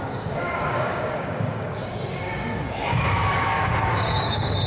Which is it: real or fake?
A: fake